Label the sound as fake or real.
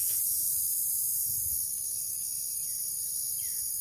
real